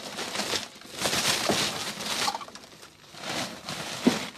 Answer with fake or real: real